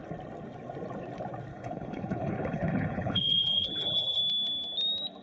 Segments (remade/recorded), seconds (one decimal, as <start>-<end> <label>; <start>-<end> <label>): 0.0-1.5 recorded; 1.5-4.2 remade; 4.2-5.2 recorded